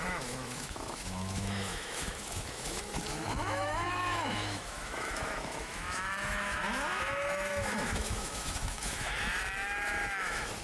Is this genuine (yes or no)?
no